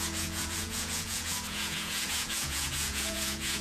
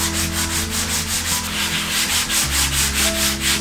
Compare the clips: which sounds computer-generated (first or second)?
first